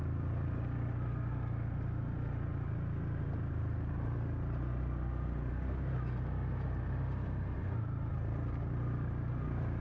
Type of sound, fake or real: real